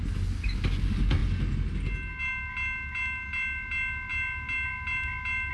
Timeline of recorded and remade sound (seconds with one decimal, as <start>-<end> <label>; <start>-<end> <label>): 0.0-5.5 recorded